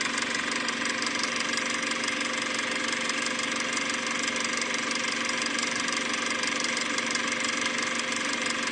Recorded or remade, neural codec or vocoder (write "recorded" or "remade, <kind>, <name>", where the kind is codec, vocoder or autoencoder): recorded